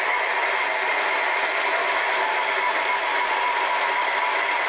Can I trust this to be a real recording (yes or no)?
yes